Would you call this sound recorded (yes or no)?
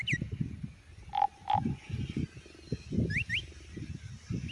yes